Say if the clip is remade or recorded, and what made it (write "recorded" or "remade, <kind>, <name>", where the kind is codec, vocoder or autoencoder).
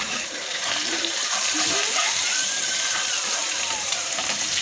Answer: remade, vocoder, BigVGAN v2